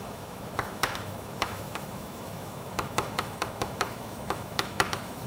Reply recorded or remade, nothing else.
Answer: remade